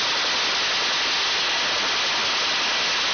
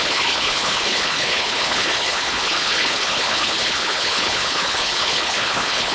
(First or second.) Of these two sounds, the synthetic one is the second